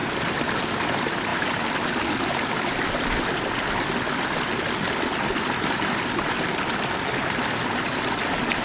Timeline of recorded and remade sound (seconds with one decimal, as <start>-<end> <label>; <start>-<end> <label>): 0.0-8.6 recorded